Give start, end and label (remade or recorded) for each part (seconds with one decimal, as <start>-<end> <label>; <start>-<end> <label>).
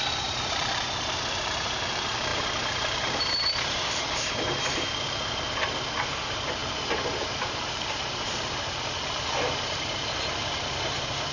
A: 0.0-6.6 remade; 6.6-7.2 recorded; 7.2-11.3 remade